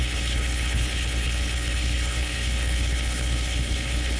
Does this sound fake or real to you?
fake